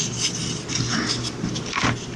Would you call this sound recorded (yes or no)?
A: yes